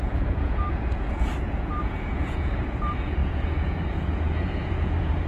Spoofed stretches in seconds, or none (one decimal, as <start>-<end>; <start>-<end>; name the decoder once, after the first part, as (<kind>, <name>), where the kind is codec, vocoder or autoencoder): 0.0-5.3 (vocoder, Vocos)